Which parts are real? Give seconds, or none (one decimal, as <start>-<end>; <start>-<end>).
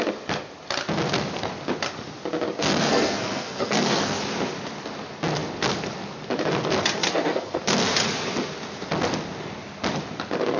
0.0-2.6; 4.2-7.0; 7.6-10.6